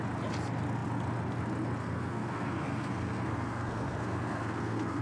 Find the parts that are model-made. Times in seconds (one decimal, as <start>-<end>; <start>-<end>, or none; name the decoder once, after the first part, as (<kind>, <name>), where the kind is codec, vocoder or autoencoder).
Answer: 1.8-5.0 (codec, SNAC)